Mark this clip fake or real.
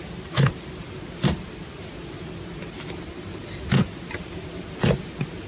real